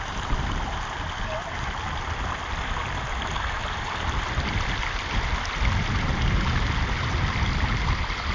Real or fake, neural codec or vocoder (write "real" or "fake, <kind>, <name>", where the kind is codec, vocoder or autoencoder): real